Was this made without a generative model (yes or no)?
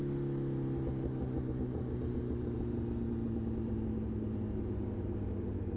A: yes